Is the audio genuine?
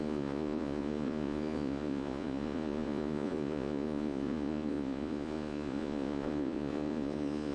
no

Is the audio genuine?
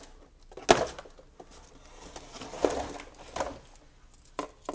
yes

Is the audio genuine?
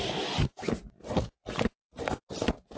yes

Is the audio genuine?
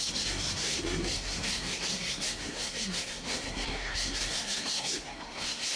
no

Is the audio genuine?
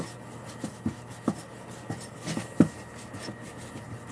yes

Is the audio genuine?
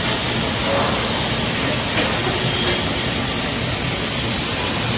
yes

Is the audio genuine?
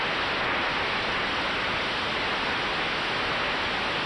yes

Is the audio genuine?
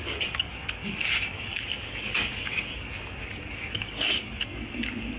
no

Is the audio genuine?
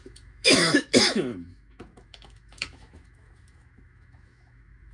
no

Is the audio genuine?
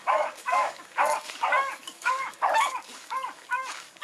no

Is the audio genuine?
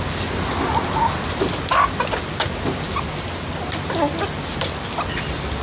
yes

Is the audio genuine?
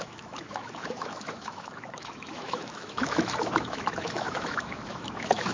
no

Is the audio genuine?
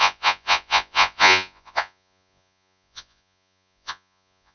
no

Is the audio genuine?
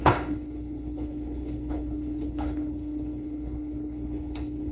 no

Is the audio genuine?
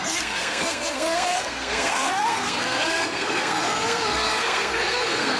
no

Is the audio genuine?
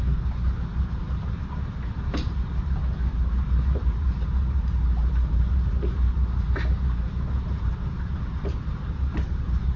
no